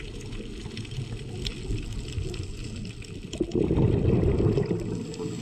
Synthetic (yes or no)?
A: no